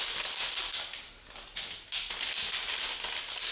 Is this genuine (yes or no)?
yes